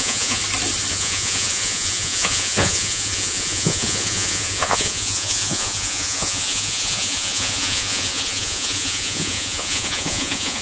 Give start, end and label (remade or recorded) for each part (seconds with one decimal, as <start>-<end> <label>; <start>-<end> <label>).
0.0-0.4 remade; 0.4-0.9 recorded; 0.9-10.6 remade